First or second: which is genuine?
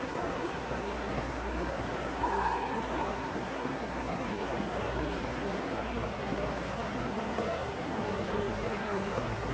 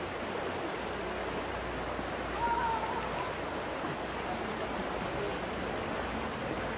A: second